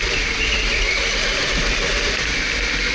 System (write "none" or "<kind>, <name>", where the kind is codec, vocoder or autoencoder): none